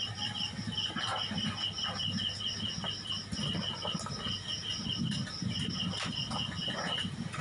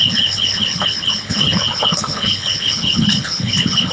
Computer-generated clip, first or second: second